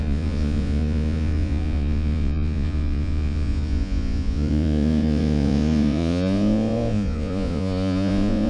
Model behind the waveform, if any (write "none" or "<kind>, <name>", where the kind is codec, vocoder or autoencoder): vocoder, Vocos